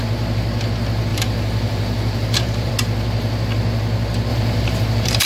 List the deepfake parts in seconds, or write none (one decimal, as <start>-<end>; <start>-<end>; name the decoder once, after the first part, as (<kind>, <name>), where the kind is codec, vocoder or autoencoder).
1.1-2.7 (vocoder, BigVGAN v2); 4.3-5.3